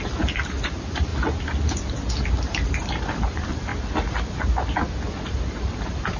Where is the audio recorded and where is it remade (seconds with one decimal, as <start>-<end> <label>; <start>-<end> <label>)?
0.0-1.1 remade; 1.1-2.3 recorded; 2.3-3.7 remade; 3.7-5.2 recorded; 5.2-6.2 remade